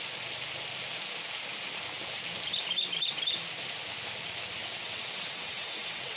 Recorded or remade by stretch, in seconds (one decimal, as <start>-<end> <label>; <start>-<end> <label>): 0.0-4.6 recorded; 4.6-6.2 remade